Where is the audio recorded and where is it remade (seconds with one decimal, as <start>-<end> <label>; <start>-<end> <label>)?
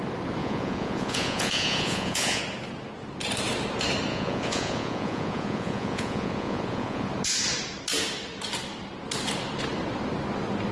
0.0-0.4 recorded; 0.4-2.4 remade; 2.4-4.1 recorded; 4.1-7.1 remade; 7.1-10.7 recorded